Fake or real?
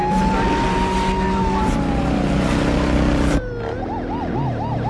real